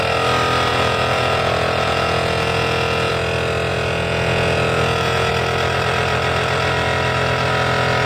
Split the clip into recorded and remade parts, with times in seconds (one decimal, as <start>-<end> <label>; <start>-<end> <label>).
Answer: 0.0-0.7 recorded; 0.7-3.1 remade; 3.1-3.7 recorded; 3.7-5.3 remade; 5.3-8.1 recorded